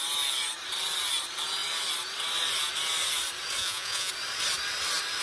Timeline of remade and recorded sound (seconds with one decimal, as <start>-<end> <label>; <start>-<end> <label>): 0.0-3.6 recorded; 3.6-4.1 remade; 4.1-5.2 recorded